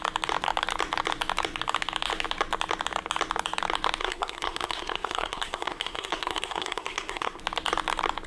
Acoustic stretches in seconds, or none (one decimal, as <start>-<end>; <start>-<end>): 0.0-4.0; 7.4-8.3